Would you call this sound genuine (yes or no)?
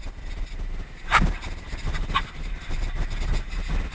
yes